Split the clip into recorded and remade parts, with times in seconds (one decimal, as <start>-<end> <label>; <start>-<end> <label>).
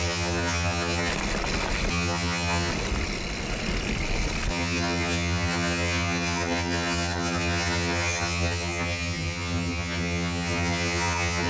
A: 0.0-1.1 remade; 1.1-1.9 recorded; 1.9-2.7 remade; 2.7-4.5 recorded; 4.5-11.5 remade